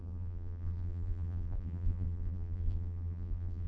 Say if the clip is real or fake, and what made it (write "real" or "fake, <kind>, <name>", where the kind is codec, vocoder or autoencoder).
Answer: fake, vocoder, BigVGAN v2